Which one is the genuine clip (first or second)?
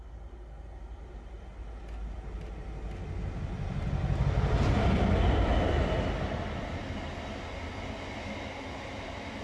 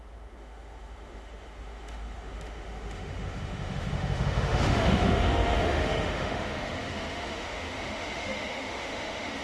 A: first